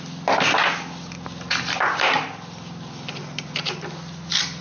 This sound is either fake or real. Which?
real